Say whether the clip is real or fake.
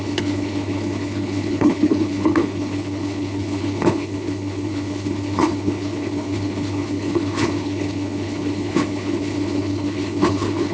fake